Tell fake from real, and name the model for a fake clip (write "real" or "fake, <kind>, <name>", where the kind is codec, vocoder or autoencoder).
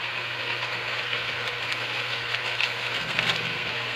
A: fake, codec, SNAC